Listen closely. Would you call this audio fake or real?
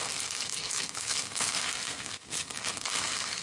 fake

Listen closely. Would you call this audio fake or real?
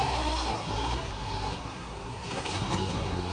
fake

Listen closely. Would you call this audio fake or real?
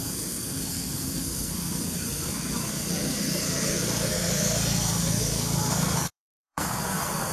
fake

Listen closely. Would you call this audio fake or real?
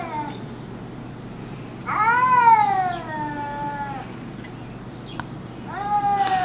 real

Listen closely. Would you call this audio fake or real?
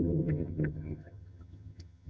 fake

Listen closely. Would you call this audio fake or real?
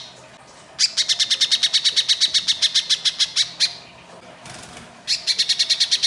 real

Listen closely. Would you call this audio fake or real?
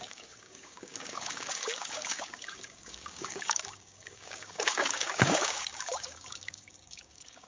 fake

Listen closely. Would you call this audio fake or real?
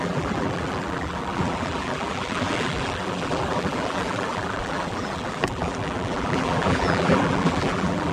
fake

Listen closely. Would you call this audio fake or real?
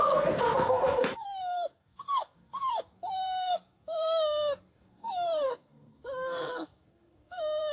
fake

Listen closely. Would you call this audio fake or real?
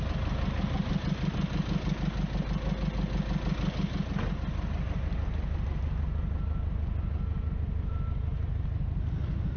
real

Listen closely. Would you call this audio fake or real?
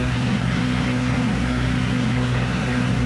fake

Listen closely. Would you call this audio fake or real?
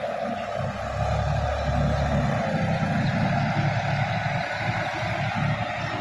real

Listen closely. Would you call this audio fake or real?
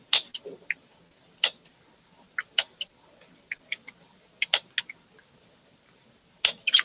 real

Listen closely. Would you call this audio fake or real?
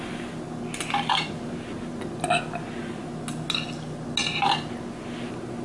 real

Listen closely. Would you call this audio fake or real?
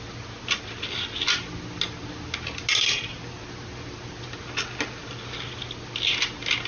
real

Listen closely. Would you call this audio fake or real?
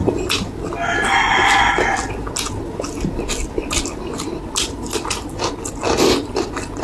real